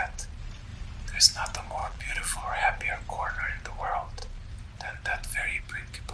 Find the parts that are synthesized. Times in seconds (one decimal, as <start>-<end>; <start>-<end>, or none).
1.8-2.4